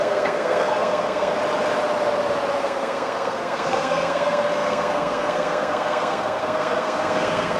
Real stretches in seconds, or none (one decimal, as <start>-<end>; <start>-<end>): 1.3-2.6